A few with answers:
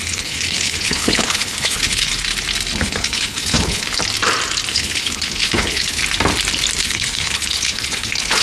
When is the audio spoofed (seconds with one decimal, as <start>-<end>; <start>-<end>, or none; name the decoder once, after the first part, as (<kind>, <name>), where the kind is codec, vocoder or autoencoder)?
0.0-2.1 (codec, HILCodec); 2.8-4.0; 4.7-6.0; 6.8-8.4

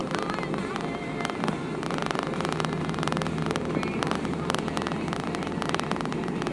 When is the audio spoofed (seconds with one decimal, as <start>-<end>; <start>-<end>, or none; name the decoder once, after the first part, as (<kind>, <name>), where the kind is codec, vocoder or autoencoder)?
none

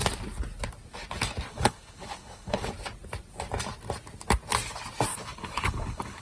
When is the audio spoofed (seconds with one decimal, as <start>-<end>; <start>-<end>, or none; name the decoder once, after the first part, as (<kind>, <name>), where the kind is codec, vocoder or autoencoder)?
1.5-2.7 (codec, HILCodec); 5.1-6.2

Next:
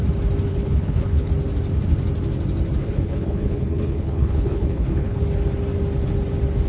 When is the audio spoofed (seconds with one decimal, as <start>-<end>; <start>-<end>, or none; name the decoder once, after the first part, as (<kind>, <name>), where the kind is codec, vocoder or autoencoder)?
0.5-1.3 (codec, HILCodec); 2.8-5.2

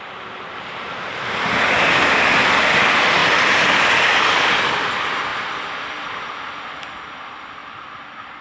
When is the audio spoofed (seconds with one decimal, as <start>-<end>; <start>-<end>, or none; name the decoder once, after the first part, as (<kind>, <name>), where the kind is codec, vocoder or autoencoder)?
none

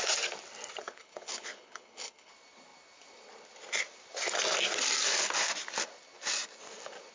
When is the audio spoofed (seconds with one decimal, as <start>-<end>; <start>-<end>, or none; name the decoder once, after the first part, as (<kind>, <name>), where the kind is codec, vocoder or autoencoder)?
0.8-2.3 (codec, HILCodec)